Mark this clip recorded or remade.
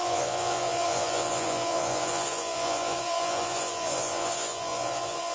remade